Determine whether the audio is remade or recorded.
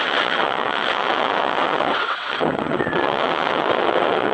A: remade